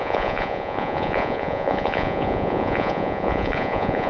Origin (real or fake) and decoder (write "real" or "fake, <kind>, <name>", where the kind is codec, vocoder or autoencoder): fake, vocoder, Vocos